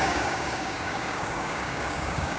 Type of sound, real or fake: fake